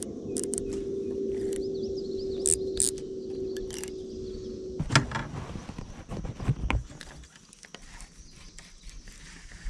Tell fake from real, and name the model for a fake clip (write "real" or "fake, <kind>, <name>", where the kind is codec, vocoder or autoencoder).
real